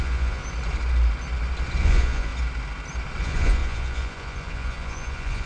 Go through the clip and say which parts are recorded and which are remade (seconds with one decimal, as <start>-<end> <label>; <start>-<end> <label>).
0.0-0.4 remade; 0.4-1.8 recorded; 1.8-2.3 remade; 2.3-3.2 recorded; 3.2-5.5 remade